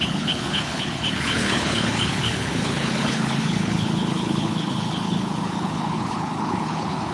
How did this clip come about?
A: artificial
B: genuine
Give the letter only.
A